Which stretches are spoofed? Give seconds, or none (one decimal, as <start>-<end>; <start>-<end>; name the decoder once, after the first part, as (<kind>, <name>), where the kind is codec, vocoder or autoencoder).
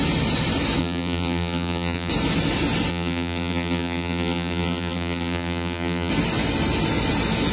0.8-2.1 (vocoder, BigVGAN v2); 2.9-6.1